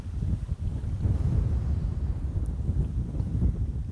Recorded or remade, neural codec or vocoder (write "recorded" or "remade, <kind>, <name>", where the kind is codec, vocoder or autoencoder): remade, vocoder, BigVGAN v2